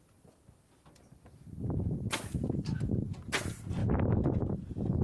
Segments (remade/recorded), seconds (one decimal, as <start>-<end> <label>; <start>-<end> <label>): 0.0-5.0 recorded